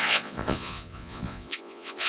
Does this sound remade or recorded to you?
remade